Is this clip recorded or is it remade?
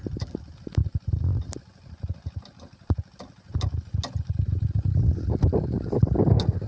recorded